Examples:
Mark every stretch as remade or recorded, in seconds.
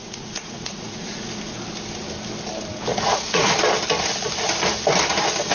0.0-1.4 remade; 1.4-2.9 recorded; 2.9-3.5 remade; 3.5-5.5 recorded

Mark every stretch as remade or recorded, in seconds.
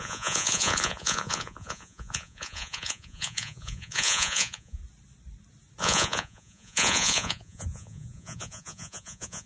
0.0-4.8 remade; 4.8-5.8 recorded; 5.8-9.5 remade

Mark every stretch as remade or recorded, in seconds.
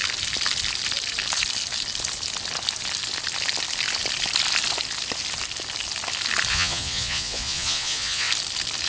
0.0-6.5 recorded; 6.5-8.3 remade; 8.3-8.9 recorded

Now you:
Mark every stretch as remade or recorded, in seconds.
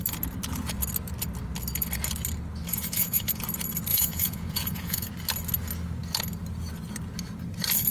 0.0-2.7 recorded; 2.7-3.4 remade; 3.4-3.9 recorded; 3.9-5.1 remade; 5.1-7.9 recorded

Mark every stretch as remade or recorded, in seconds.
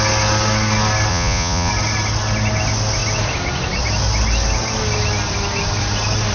0.0-1.1 recorded; 1.1-1.7 remade; 1.7-6.3 recorded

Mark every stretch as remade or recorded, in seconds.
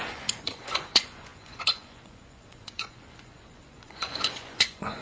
0.0-5.0 remade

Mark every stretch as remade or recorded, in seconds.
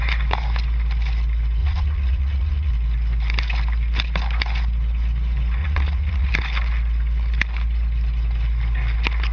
0.0-1.6 recorded; 1.6-2.7 remade; 2.7-5.6 recorded; 5.6-6.3 remade; 6.3-9.3 recorded